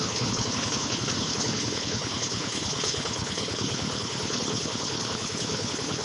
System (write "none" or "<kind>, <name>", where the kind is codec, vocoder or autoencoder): codec, HILCodec